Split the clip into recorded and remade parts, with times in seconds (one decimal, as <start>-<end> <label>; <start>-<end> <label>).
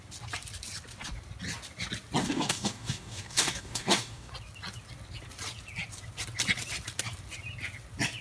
0.0-2.2 recorded; 2.2-4.3 remade; 4.3-8.2 recorded